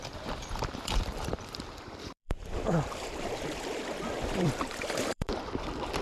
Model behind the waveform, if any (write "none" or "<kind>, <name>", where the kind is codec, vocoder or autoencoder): vocoder, BigVGAN v2